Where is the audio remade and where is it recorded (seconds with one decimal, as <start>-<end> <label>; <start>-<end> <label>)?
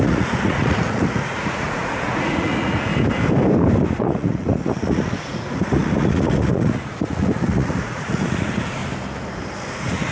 0.0-2.9 remade; 2.9-3.9 recorded; 3.9-8.8 remade; 8.8-9.7 recorded; 9.7-10.1 remade